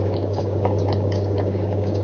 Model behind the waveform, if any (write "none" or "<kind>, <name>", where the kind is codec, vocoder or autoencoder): codec, DAC